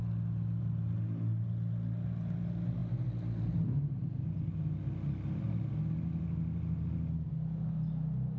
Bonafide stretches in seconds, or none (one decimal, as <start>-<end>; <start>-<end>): 0.0-8.4